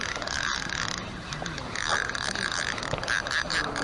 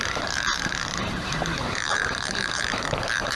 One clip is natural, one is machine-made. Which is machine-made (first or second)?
second